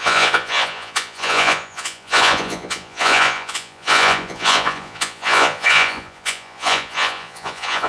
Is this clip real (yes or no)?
no